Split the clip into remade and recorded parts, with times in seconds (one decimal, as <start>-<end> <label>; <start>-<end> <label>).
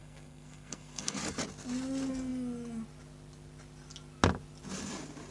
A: 0.0-1.2 remade; 1.2-5.3 recorded